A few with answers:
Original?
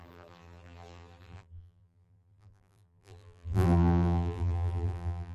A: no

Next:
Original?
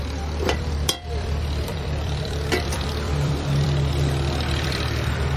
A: no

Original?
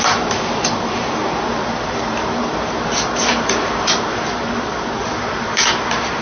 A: no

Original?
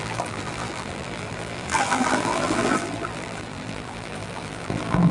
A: no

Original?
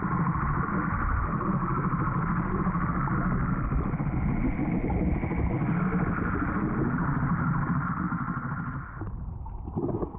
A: yes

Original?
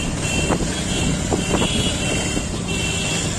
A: yes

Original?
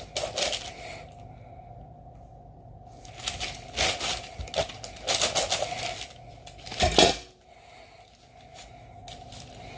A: yes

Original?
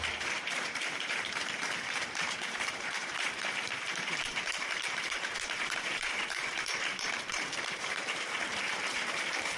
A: no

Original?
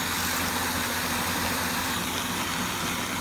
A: yes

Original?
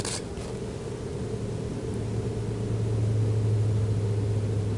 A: yes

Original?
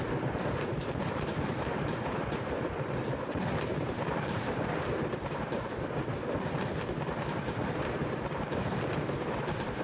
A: no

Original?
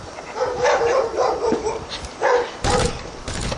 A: no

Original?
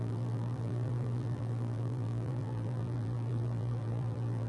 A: no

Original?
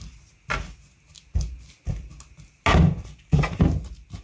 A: yes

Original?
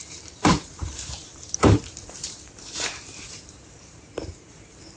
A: no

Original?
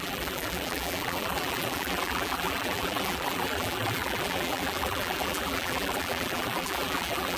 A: no